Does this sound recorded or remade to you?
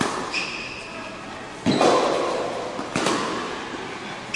recorded